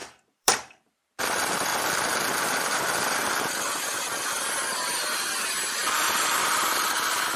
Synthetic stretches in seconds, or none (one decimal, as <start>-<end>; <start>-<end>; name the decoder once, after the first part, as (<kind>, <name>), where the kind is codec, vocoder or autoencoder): 0.0-1.7 (vocoder, BigVGAN v2); 2.6-3.9; 4.9-7.4